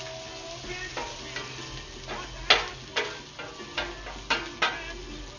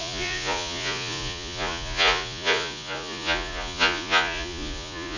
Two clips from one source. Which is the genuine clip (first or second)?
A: first